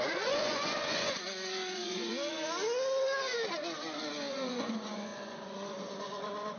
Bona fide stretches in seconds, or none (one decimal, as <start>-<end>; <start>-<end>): 2.1-4.3

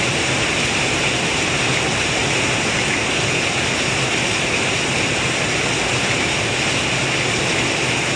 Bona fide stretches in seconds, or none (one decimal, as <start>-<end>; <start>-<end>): 0.0-8.2

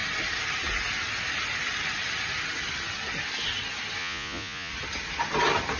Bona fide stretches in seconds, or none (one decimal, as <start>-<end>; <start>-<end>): 0.0-4.0; 4.7-5.8